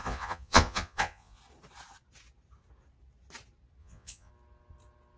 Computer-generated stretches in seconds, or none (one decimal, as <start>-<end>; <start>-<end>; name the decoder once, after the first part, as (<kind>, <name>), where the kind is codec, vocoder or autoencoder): 0.0-1.4 (vocoder, Vocos); 3.8-4.3